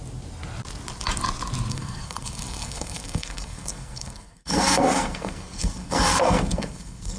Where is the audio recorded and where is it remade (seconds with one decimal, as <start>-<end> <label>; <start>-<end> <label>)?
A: 0.0-1.7 recorded; 1.7-7.2 remade

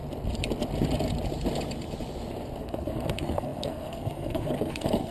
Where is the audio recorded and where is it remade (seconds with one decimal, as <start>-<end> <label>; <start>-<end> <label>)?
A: 0.0-2.6 recorded; 2.6-5.1 remade

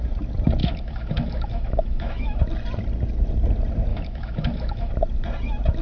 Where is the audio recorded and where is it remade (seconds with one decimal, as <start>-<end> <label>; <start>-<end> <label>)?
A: 0.0-0.6 recorded; 0.6-2.4 remade; 2.4-3.9 recorded; 3.9-4.9 remade; 4.9-5.8 recorded

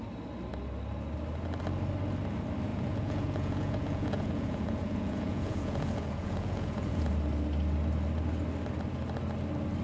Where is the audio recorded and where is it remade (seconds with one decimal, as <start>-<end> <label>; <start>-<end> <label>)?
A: 0.0-2.7 recorded; 2.7-7.1 remade; 7.1-9.8 recorded

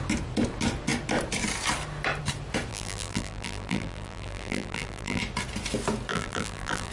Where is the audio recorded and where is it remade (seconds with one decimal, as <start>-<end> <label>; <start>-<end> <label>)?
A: 0.0-2.7 recorded; 2.7-5.2 remade; 5.2-6.1 recorded; 6.1-6.9 remade

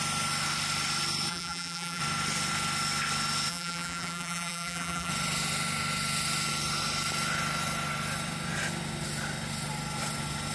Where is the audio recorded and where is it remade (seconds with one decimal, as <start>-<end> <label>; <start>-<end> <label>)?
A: 0.0-1.3 recorded; 1.3-2.0 remade; 2.0-3.5 recorded; 3.5-5.1 remade; 5.1-10.5 recorded

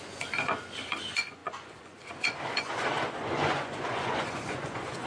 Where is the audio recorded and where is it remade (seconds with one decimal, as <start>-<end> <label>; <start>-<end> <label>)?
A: 0.0-5.1 remade